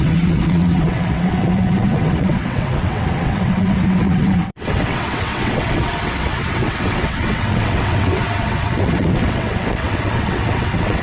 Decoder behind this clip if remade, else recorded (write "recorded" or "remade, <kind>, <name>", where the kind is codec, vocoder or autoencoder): remade, vocoder, WaveNeXt